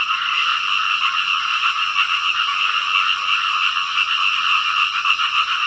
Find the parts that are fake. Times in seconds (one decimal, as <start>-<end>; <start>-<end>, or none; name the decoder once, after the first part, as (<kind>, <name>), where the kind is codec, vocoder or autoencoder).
0.0-0.5 (vocoder, Vocos); 1.4-1.8; 5.2-5.7